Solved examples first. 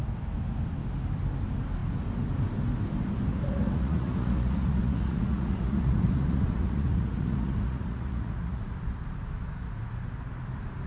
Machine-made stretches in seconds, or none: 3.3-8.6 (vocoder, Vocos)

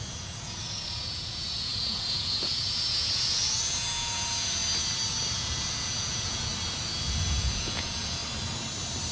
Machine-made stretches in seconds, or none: 0.0-4.6 (vocoder, Vocos); 5.3-6.5; 7.1-8.2